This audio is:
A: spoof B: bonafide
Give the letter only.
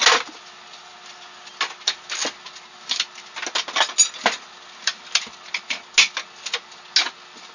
B